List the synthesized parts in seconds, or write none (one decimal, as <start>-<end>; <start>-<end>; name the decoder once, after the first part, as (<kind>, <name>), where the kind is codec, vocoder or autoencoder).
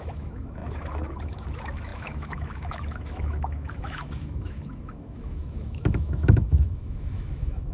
0.0-7.7 (autoencoder, DAC-VAE)